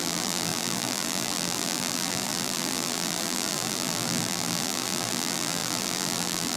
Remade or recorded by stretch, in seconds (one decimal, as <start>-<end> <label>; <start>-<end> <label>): 0.0-6.6 remade